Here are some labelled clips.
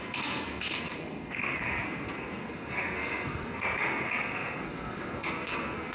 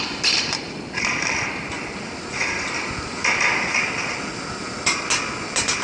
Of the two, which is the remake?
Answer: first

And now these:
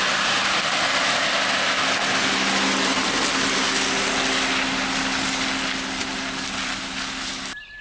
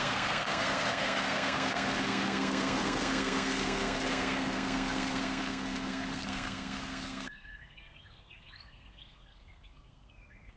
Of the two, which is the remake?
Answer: second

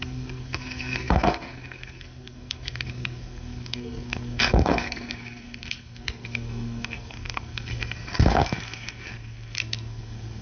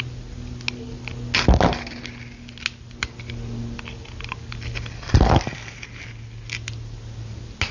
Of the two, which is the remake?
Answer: first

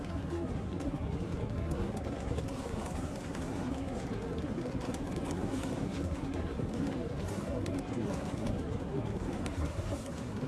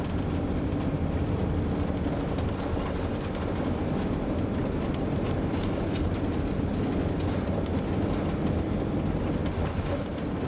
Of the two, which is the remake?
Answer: first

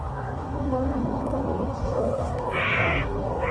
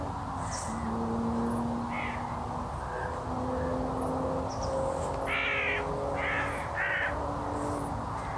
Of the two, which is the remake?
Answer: first